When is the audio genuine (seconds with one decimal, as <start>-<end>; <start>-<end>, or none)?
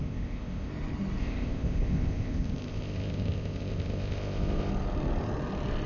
0.7-1.2; 4.7-5.9